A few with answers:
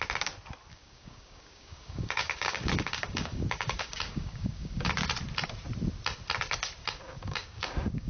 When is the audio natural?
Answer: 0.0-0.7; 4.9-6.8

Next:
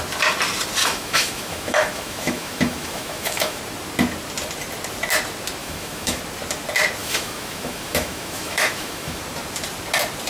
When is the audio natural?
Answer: 0.0-0.8; 3.6-5.6; 6.2-7.0; 9.2-10.3